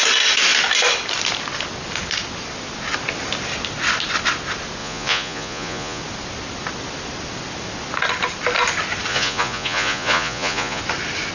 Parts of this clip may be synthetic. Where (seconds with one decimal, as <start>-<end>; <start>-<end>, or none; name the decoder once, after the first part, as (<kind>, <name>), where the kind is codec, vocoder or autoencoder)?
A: 4.8-6.0 (vocoder, Vocos); 9.1-10.8